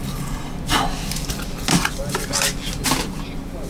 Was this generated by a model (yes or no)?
no